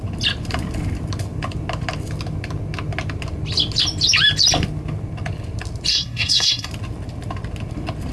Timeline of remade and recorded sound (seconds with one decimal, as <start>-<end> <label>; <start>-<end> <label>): 0.0-5.9 recorded; 5.9-6.7 remade; 6.7-8.1 recorded